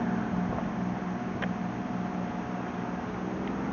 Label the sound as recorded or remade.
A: recorded